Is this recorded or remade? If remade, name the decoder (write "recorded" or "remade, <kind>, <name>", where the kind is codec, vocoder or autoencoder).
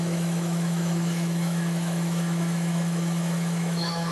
remade, autoencoder, DAC-VAE